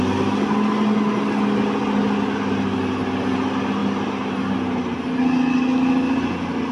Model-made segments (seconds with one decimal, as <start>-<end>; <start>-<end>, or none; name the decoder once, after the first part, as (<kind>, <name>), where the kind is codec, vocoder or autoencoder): none